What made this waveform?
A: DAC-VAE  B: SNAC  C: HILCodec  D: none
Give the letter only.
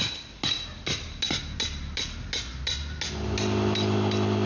D